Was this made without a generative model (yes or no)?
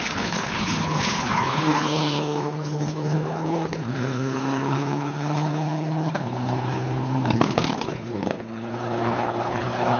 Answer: no